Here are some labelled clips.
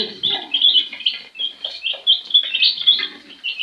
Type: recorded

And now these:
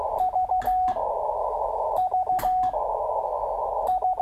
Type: recorded